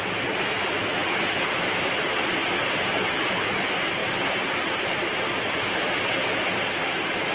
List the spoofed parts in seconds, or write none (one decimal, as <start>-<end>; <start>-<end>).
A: 2.4-3.5; 4.0-5.9